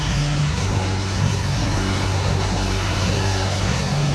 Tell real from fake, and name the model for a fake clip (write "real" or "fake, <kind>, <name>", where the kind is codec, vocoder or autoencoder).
fake, codec, SNAC